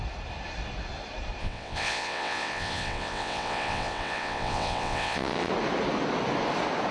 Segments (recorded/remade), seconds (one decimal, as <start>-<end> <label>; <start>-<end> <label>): 0.0-1.4 recorded; 1.4-5.5 remade; 5.5-6.9 recorded